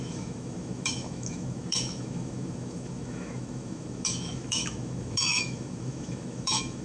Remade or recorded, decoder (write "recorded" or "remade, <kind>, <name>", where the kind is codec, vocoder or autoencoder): remade, autoencoder, DAC-VAE